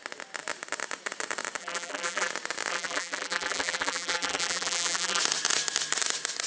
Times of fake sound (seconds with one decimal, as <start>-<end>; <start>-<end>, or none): 1.6-2.3; 2.7-5.2